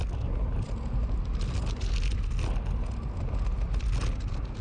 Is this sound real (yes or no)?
yes